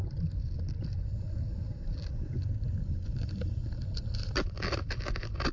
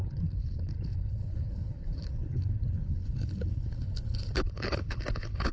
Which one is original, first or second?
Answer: first